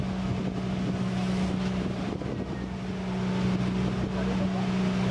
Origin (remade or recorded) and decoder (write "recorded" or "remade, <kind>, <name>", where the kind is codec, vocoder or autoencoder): recorded